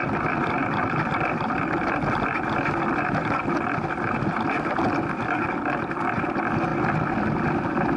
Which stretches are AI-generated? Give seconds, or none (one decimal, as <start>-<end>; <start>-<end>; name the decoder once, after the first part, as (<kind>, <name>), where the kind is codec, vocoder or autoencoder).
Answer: none